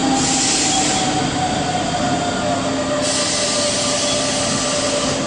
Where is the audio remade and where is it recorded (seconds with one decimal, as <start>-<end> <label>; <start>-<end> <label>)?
0.0-5.3 recorded